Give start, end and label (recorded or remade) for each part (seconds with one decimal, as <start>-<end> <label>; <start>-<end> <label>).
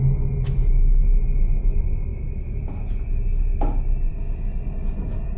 0.0-5.4 recorded